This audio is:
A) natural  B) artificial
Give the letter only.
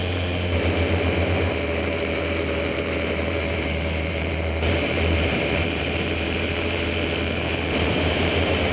B